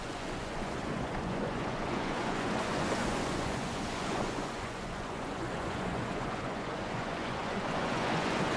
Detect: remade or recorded remade